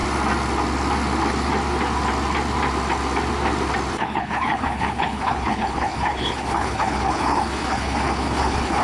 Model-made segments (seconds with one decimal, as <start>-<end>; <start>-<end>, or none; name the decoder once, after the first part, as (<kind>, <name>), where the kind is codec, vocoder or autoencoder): 3.9-8.8 (codec, HILCodec)